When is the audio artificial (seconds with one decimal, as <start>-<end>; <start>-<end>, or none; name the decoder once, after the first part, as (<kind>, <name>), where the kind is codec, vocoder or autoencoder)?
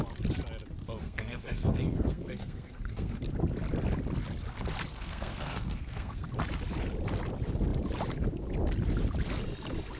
1.0-3.2 (codec, SNAC); 4.9-6.3